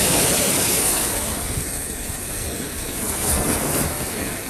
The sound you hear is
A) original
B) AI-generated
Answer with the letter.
B